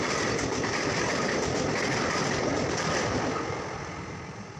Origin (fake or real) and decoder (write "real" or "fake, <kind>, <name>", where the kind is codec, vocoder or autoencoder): fake, vocoder, BigVGAN v2